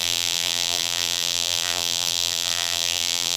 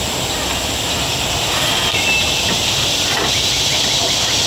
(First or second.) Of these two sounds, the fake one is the first